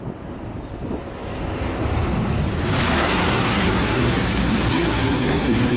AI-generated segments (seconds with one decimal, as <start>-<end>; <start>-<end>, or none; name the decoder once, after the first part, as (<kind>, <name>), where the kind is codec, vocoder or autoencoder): 3.0-5.8 (codec, SNAC)